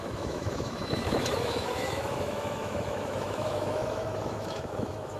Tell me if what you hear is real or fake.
fake